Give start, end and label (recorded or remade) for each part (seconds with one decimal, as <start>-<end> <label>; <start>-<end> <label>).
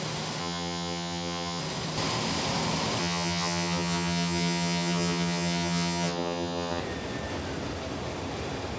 0.0-0.4 recorded; 0.4-1.6 remade; 1.6-3.0 recorded; 3.0-6.8 remade; 6.8-8.8 recorded